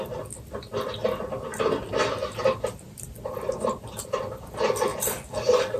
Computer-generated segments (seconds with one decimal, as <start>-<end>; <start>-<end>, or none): none